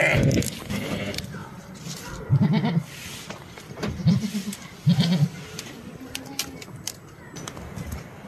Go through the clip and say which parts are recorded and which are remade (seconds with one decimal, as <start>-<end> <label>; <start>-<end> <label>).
0.0-8.3 recorded